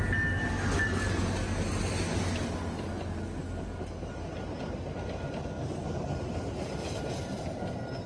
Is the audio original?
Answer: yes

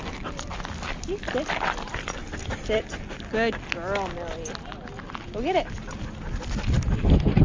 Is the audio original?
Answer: yes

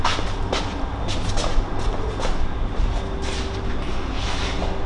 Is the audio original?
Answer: yes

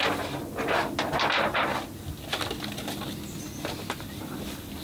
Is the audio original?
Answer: yes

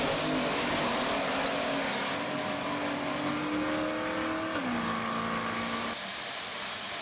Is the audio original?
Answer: yes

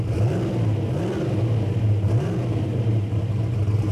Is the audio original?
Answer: yes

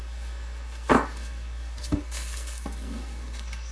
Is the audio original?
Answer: no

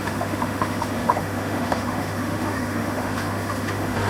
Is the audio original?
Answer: no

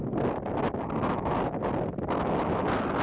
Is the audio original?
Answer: yes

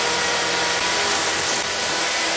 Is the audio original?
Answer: yes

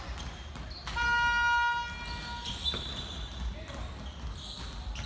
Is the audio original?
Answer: yes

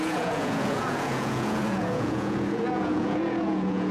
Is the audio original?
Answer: no